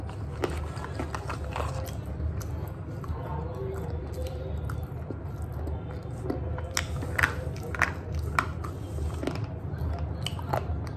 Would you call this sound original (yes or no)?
yes